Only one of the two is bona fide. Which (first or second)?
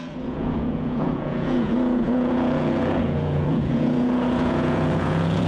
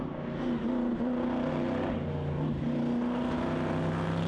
second